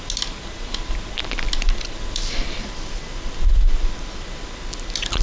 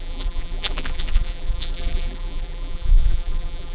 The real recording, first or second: first